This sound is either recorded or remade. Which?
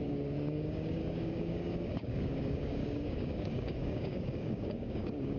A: remade